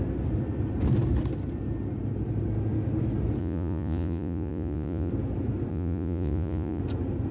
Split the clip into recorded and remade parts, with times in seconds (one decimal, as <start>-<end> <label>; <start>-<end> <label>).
0.0-3.4 recorded; 3.4-5.1 remade; 5.1-5.7 recorded; 5.7-6.8 remade; 6.8-7.3 recorded